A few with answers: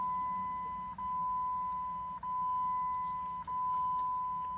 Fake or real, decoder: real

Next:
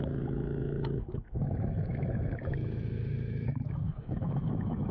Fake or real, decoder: fake, autoencoder, DAC-VAE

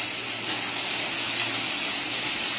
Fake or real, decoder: real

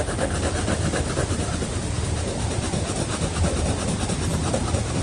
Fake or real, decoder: real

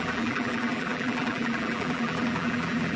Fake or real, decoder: fake, vocoder, BigVGAN v2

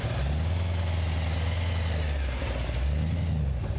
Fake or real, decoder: real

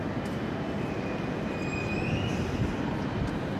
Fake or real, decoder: real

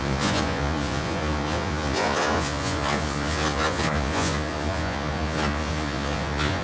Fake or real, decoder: fake, vocoder, Vocos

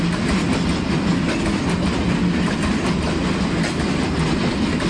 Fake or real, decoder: real